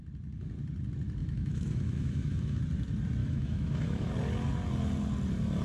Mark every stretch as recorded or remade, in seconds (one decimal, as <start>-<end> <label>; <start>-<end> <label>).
0.0-1.2 recorded; 1.2-2.6 remade; 2.6-3.2 recorded; 3.2-4.1 remade; 4.1-5.6 recorded